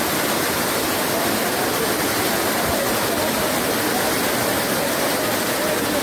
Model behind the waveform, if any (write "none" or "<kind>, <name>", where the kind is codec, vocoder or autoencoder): none